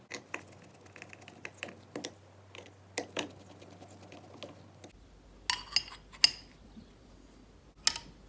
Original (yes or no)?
yes